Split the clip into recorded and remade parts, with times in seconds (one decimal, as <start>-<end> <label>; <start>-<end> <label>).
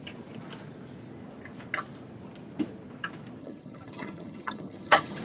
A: 0.0-3.4 recorded; 3.4-5.2 remade